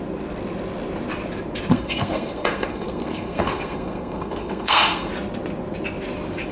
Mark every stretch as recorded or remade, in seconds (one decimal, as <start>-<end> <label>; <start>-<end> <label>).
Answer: 0.0-1.7 recorded; 1.7-5.1 remade; 5.1-6.5 recorded